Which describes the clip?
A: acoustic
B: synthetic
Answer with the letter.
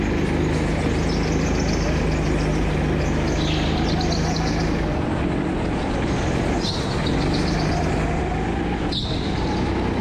A